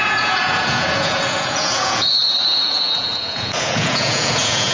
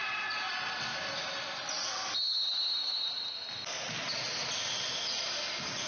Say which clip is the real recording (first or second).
second